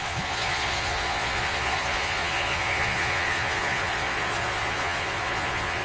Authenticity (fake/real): fake